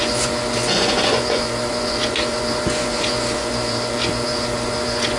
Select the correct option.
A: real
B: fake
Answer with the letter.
B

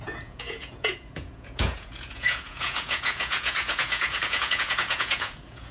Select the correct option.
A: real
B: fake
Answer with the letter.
B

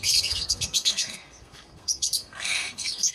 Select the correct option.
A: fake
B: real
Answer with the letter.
A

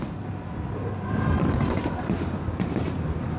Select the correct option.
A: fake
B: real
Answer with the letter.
B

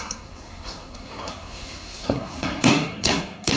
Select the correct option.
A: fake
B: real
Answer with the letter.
A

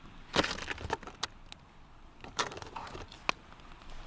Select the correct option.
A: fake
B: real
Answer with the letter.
B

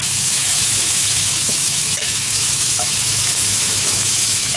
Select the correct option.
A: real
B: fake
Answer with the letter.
B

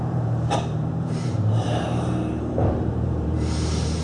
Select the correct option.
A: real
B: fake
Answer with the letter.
B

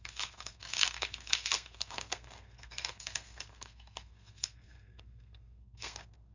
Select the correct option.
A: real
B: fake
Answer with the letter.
B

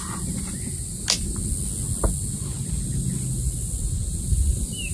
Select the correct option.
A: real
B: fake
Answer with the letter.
A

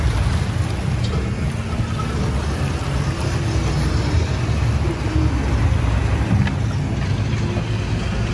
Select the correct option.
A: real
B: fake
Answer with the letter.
A